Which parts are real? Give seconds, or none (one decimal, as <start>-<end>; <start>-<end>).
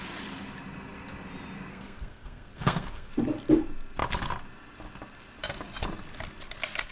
0.0-1.7; 3.1-6.9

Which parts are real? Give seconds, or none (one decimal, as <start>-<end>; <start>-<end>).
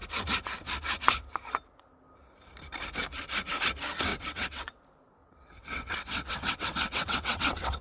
0.0-4.1; 4.8-5.2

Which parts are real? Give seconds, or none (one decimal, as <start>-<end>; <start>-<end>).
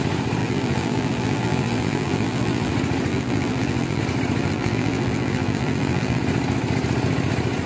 0.0-0.4; 2.7-3.1; 4.0-4.4; 6.2-7.7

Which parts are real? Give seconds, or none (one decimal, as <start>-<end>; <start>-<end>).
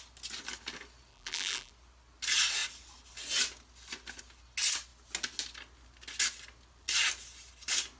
0.0-1.1; 1.7-8.0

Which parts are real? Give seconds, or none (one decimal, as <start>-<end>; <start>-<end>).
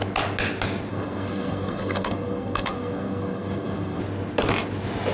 0.0-0.9; 4.0-5.1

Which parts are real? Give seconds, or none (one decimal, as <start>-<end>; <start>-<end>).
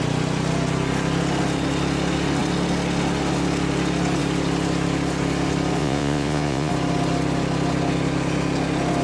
0.0-5.8; 6.7-9.0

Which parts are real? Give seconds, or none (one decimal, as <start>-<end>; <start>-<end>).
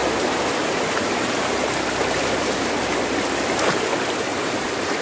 0.0-4.3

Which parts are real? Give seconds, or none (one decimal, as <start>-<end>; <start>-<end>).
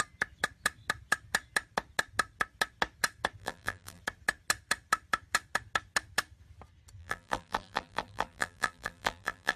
0.0-3.4; 4.0-7.0